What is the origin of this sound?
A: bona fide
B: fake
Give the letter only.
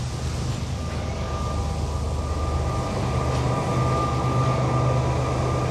A